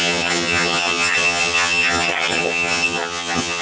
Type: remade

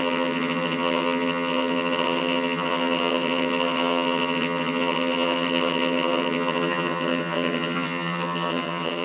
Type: remade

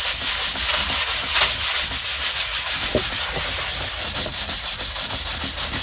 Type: recorded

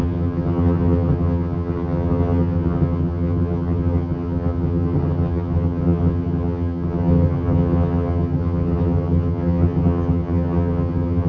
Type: remade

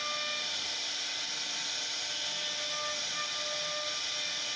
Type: recorded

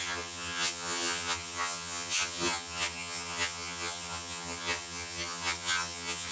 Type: remade